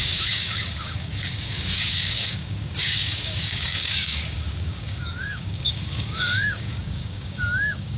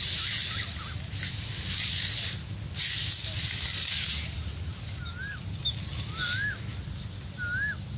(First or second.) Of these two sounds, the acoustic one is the second